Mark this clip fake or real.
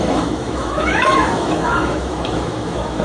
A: fake